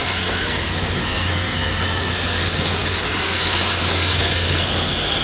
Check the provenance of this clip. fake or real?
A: fake